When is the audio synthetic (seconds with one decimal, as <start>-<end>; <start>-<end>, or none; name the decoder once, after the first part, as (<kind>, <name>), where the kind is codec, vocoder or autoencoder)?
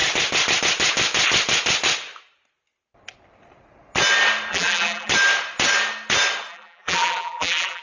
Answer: 4.5-5.1 (vocoder, BigVGAN v2); 6.5-7.8